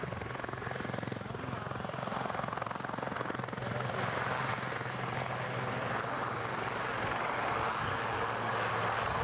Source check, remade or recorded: recorded